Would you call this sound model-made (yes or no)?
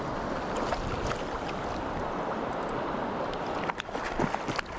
no